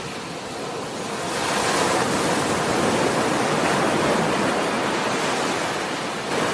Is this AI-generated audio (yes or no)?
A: no